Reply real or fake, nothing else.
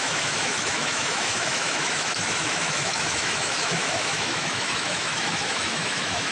fake